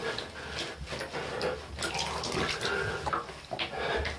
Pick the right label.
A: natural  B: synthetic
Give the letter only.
A